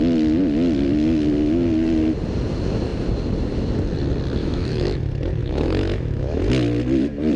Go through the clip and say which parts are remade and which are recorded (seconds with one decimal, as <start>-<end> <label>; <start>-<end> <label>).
0.0-4.4 recorded; 4.4-5.0 remade; 5.0-5.4 recorded; 5.4-6.5 remade; 6.5-7.4 recorded